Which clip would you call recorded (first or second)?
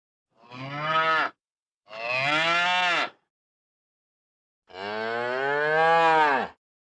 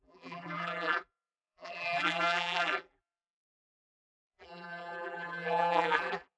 first